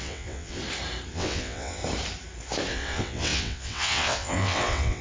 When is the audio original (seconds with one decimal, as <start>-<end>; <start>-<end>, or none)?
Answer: 0.6-1.1; 1.8-2.7